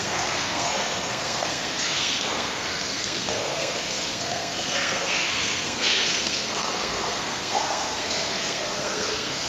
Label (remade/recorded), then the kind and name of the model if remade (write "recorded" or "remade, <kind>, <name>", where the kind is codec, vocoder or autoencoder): remade, codec, SNAC